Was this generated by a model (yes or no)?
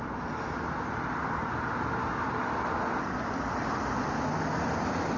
no